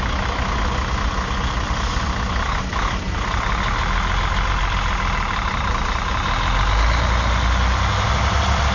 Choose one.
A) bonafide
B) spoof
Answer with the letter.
A